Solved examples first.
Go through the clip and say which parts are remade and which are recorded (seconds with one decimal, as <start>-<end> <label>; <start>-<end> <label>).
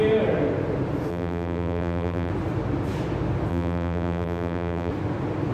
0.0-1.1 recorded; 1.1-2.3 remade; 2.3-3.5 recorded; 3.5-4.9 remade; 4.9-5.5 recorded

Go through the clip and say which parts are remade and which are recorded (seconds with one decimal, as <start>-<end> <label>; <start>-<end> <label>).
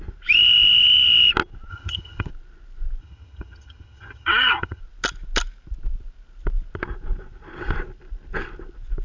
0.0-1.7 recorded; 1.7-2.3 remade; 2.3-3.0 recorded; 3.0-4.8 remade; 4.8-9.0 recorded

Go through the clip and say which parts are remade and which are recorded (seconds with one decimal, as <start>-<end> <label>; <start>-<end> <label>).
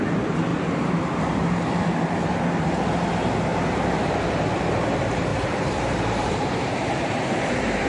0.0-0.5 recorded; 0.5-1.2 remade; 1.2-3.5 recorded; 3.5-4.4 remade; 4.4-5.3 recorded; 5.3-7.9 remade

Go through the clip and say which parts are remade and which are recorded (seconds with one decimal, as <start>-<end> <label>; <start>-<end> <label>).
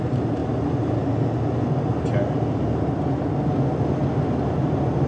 0.0-5.1 recorded